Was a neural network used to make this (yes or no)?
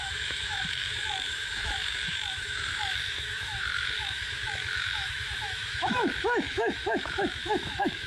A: yes